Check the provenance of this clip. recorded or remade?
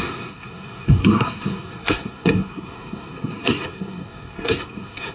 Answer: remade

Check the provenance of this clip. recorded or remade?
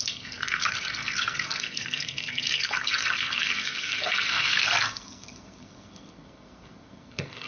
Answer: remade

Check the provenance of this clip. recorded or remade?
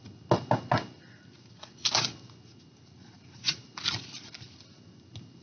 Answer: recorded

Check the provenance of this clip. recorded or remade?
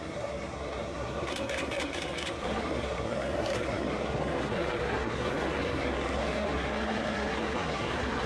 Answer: remade